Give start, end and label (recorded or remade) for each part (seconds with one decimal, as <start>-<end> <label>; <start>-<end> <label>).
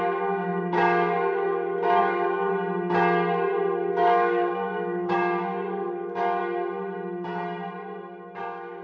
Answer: 0.0-2.5 remade; 2.5-3.9 recorded; 3.9-6.4 remade; 6.4-8.4 recorded; 8.4-8.8 remade